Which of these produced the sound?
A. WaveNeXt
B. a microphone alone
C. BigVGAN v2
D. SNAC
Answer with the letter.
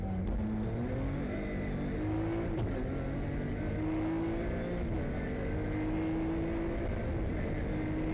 B